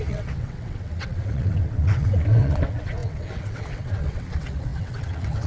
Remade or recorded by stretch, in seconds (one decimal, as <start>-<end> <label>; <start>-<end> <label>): 0.0-5.5 remade